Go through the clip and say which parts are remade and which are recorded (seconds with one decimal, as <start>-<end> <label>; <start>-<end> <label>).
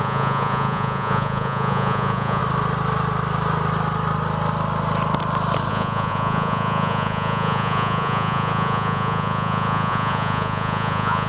0.0-2.4 remade; 2.4-5.7 recorded; 5.7-11.3 remade